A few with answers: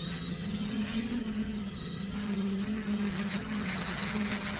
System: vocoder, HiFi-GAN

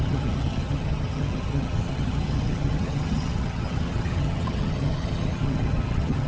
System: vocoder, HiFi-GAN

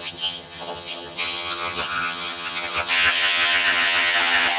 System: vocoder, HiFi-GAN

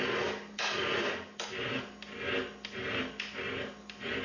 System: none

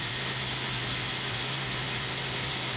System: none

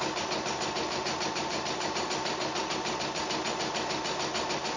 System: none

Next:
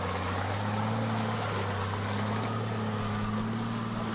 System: none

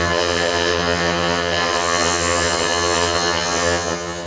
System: vocoder, HiFi-GAN